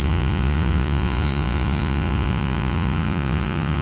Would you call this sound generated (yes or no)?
yes